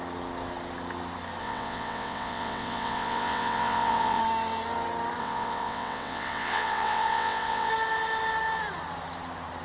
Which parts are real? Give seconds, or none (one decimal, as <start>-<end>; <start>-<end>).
0.0-1.4; 4.2-5.2; 7.7-9.6